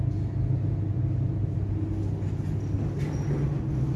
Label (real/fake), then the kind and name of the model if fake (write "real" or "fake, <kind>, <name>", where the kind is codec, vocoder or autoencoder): real